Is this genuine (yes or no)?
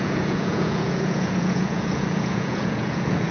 no